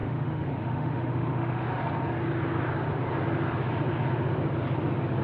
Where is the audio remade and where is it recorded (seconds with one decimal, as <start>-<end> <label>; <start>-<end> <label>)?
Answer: 0.0-1.8 remade; 1.8-5.2 recorded

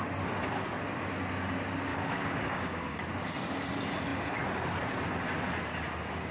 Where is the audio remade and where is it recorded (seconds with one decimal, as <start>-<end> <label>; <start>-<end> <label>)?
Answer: 0.0-1.9 recorded; 1.9-3.0 remade; 3.0-6.3 recorded

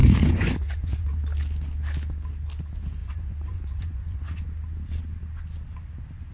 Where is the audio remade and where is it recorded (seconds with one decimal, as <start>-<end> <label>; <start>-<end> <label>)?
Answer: 0.0-1.2 remade; 1.2-3.0 recorded; 3.0-4.5 remade; 4.5-6.3 recorded

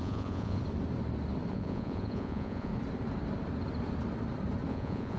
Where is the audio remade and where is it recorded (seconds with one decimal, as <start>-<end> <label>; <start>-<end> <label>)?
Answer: 0.0-0.6 remade; 0.6-1.5 recorded; 1.5-2.7 remade; 2.7-4.7 recorded; 4.7-5.2 remade

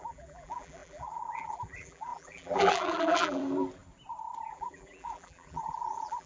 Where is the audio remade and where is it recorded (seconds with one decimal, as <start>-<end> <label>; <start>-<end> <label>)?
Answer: 0.0-3.4 remade; 3.4-4.5 recorded; 4.5-6.3 remade